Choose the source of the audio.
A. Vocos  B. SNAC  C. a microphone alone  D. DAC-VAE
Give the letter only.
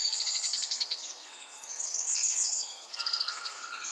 B